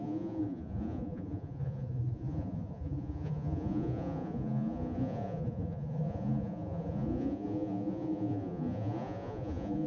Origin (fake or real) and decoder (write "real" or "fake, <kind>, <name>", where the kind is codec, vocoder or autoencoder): fake, vocoder, Vocos